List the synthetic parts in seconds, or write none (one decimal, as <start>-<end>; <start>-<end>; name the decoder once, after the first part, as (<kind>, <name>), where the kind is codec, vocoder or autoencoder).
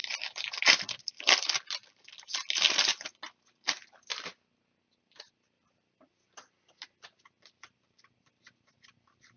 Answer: 0.0-1.8 (vocoder, BigVGAN v2); 5.0-9.4